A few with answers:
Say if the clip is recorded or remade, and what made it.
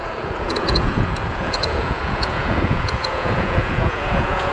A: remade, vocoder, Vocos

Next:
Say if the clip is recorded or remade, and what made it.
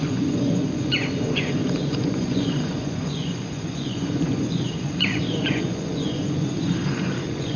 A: remade, vocoder, Vocos